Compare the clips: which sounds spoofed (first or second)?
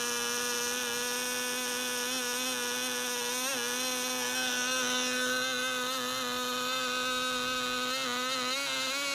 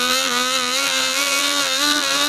second